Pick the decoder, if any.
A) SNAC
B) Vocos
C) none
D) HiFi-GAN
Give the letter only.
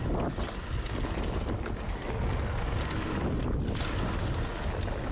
C